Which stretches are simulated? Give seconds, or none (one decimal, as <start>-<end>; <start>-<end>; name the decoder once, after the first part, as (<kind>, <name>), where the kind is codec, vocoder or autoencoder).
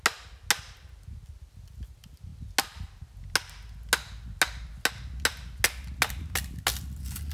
none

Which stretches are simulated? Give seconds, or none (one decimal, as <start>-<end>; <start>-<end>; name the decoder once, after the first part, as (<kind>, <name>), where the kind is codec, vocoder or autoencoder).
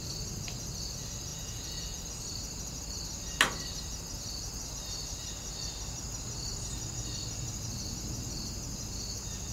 1.3-2.0 (vocoder, Vocos)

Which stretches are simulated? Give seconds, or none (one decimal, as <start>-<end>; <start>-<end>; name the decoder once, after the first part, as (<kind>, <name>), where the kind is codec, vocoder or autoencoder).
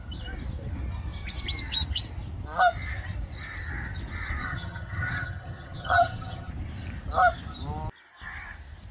4.4-6.5 (vocoder, HiFi-GAN)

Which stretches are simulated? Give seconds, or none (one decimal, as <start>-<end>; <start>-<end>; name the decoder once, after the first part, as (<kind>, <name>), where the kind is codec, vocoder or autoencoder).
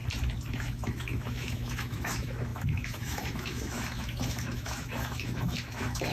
0.5-6.1 (autoencoder, DAC-VAE)